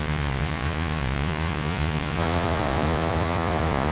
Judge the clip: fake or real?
fake